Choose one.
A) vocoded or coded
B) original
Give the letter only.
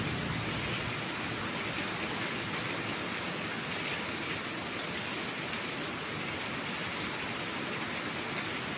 B